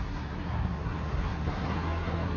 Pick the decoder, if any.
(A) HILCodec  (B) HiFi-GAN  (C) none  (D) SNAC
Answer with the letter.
D